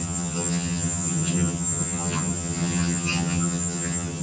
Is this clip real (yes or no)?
no